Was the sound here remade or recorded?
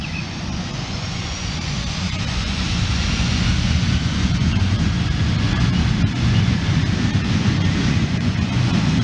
remade